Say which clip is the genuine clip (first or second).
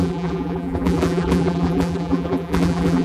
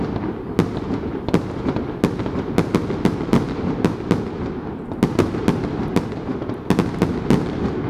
second